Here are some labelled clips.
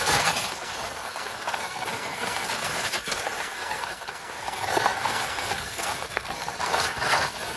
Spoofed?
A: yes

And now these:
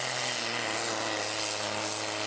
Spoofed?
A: no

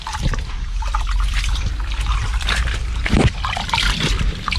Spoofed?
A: yes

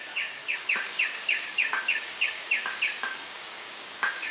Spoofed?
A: yes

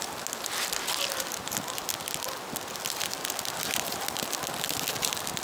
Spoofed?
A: no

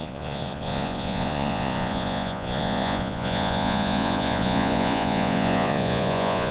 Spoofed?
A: yes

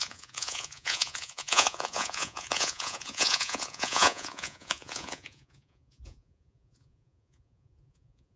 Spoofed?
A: yes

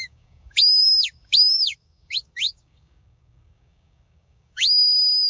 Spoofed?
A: yes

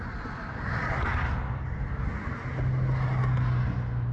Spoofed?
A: no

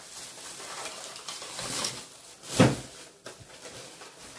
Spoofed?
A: no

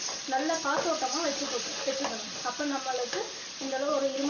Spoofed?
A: no